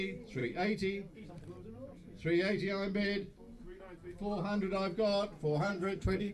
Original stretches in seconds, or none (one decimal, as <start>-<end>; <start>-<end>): 0.0-5.7

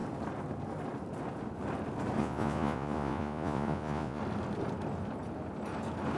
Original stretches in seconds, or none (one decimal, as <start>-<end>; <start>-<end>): 0.0-2.2; 4.2-6.2

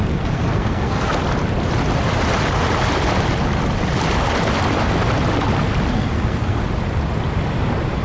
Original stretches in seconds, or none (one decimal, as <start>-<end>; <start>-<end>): 1.1-5.9; 6.6-8.0

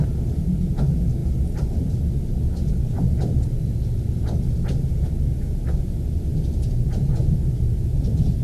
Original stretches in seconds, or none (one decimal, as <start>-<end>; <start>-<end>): 0.0-8.4

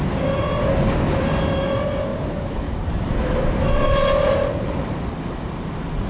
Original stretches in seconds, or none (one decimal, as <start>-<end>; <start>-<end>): 0.0-2.1; 5.0-6.1

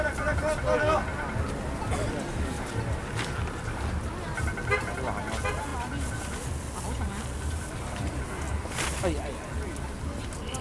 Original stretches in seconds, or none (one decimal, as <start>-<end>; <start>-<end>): 0.0-10.6